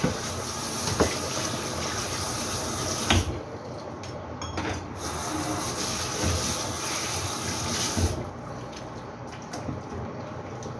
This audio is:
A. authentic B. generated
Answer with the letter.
A